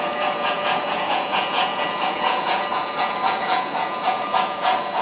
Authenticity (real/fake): fake